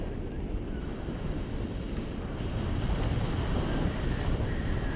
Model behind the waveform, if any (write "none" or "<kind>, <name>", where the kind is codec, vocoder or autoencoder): none